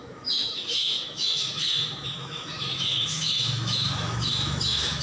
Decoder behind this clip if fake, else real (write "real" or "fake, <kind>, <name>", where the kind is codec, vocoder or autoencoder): fake, autoencoder, DAC-VAE